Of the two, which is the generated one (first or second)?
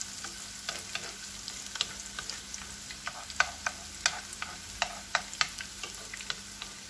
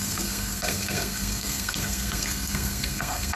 second